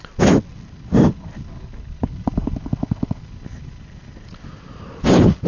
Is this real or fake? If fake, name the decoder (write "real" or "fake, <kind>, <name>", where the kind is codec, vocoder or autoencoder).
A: real